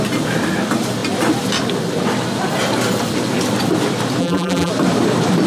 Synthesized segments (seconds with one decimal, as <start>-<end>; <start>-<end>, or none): 4.2-4.7